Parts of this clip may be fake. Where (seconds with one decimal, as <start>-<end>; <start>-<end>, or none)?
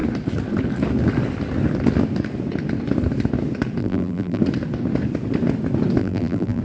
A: 3.8-4.4; 6.0-6.6